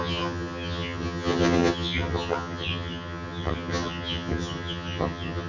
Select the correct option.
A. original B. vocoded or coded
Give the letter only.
B